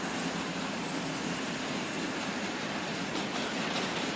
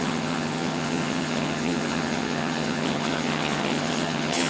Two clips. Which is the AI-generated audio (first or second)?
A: second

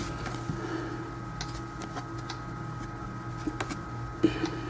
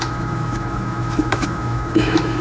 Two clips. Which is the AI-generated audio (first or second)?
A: second